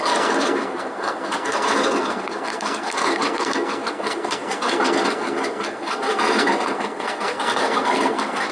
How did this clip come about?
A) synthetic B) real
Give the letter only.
A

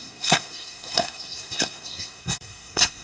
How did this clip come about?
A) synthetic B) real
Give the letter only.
A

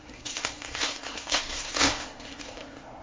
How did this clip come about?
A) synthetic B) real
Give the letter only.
A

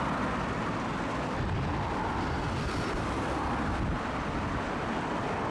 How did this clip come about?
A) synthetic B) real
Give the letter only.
B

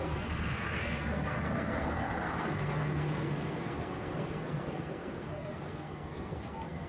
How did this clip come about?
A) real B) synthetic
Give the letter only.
B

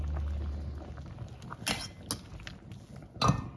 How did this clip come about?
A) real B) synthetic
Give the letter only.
A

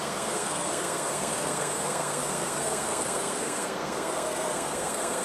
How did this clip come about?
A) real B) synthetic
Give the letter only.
B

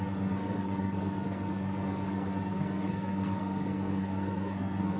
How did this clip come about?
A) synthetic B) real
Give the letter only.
A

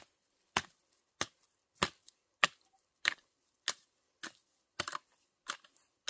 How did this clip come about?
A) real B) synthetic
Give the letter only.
A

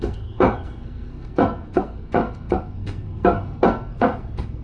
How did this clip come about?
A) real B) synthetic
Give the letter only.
B